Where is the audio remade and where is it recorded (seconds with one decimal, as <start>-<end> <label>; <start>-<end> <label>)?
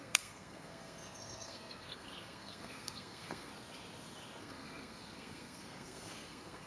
0.0-3.5 remade; 3.5-4.4 recorded; 4.4-6.7 remade